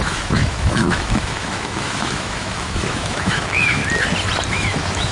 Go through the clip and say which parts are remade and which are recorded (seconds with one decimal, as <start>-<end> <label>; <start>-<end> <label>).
0.0-3.8 remade; 3.8-4.5 recorded; 4.5-5.1 remade